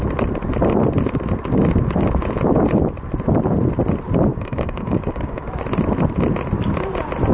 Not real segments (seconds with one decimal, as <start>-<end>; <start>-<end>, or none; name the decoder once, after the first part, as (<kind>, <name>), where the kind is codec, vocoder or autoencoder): 4.3-5.5 (codec, DAC)